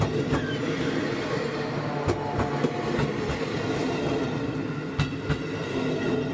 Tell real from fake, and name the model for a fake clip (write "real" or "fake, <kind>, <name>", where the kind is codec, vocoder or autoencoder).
real